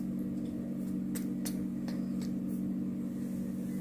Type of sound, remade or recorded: recorded